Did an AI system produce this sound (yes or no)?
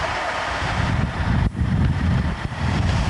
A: yes